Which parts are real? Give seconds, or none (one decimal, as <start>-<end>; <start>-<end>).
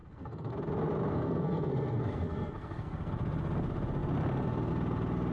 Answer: 0.5-1.1; 3.1-5.3